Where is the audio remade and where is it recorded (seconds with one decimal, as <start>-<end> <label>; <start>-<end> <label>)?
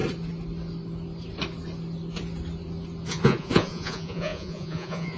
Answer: 0.0-3.1 recorded; 3.1-5.2 remade